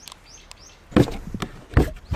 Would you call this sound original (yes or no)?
yes